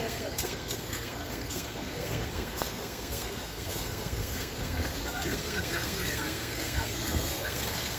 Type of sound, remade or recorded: remade